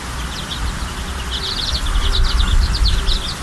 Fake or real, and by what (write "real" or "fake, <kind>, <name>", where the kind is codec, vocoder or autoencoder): real